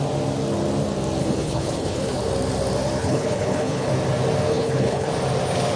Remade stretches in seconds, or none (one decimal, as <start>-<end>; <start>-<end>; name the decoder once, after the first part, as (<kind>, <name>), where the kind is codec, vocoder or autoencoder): 1.2-2.2 (codec, HILCodec); 3.0-3.9; 4.5-5.1